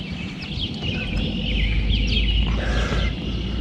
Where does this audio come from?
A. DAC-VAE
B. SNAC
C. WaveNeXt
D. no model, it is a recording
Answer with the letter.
D